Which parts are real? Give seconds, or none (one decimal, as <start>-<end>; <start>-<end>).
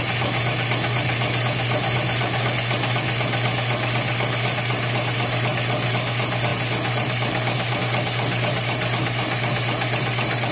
0.0-10.5